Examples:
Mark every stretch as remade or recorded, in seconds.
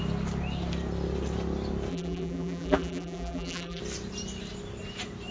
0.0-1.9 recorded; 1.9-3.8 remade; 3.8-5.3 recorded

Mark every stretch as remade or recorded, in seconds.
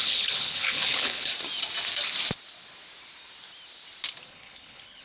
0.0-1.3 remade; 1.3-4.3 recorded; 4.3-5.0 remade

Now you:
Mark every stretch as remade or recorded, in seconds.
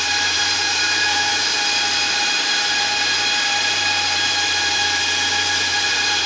0.0-1.3 remade; 1.3-2.2 recorded; 2.2-5.0 remade; 5.0-5.7 recorded; 5.7-6.3 remade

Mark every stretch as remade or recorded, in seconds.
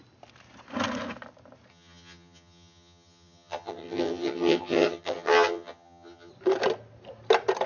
0.0-1.7 recorded; 1.7-6.3 remade; 6.3-7.7 recorded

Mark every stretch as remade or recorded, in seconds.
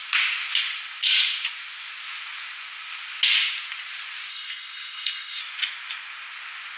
0.0-4.3 recorded; 4.3-5.4 remade; 5.4-6.8 recorded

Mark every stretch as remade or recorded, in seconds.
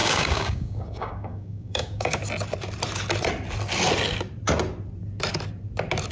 0.0-2.2 remade; 2.2-6.1 recorded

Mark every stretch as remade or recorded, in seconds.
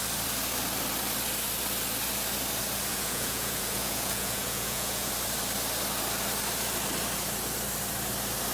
0.0-2.9 recorded; 2.9-5.1 remade; 5.1-8.5 recorded